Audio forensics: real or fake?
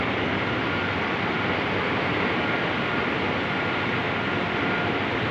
real